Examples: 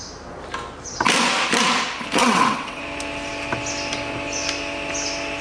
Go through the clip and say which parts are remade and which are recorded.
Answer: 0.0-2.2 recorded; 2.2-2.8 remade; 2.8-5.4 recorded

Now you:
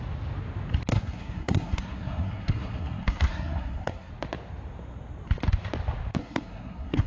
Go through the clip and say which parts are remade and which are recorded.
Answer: 0.0-0.9 recorded; 0.9-4.1 remade; 4.1-6.2 recorded; 6.2-7.1 remade

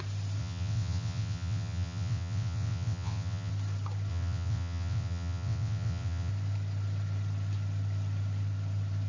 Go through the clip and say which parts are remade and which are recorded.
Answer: 0.0-0.4 recorded; 0.4-3.5 remade; 3.5-4.1 recorded; 4.1-6.3 remade; 6.3-9.1 recorded

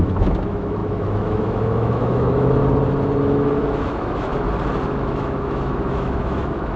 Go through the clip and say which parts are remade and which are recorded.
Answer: 0.0-2.6 remade; 2.6-3.2 recorded; 3.2-4.3 remade; 4.3-4.8 recorded; 4.8-6.8 remade

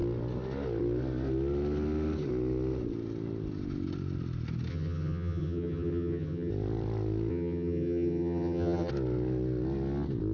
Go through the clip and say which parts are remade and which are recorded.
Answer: 0.0-4.7 recorded; 4.7-6.5 remade; 6.5-7.3 recorded; 7.3-8.9 remade; 8.9-10.3 recorded